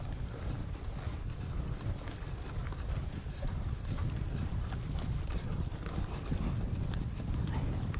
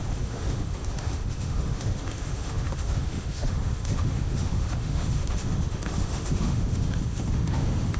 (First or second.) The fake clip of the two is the second